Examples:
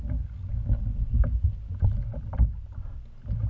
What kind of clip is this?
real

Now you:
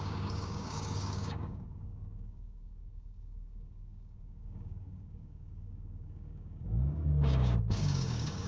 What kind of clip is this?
fake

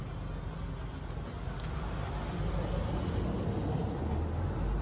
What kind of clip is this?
real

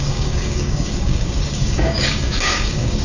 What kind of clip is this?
fake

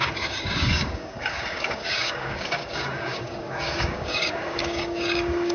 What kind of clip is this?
fake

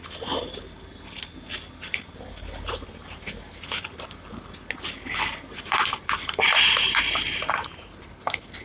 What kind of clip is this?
real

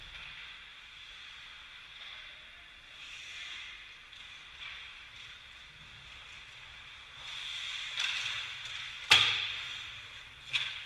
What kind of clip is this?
real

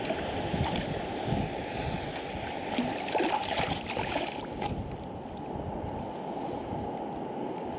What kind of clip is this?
real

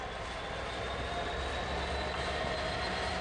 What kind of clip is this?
real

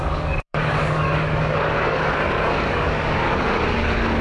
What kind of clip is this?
fake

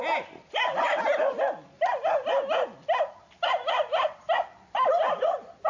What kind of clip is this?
real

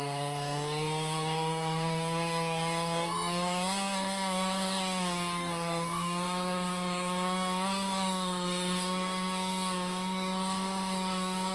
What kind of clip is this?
fake